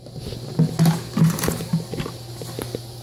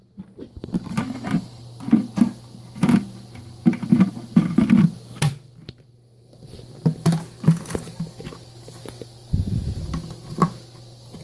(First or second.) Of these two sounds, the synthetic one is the second